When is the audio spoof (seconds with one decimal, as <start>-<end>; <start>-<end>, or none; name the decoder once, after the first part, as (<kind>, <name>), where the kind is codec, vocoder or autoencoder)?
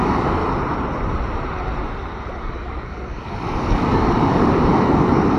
0.0-0.4 (codec, DAC); 2.4-5.4